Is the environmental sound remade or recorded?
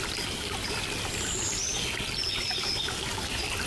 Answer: recorded